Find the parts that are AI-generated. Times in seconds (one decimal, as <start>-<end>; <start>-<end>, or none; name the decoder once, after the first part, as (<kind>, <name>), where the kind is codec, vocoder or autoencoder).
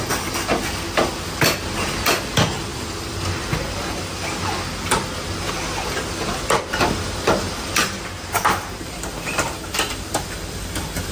none